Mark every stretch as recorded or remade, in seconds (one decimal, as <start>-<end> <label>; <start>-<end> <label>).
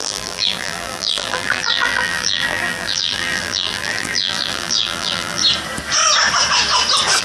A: 0.0-5.4 remade; 5.4-7.2 recorded